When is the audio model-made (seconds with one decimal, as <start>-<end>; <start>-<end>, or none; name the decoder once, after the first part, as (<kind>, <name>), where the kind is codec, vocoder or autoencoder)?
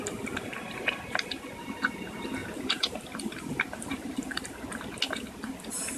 2.4-4.5 (vocoder, BigVGAN v2)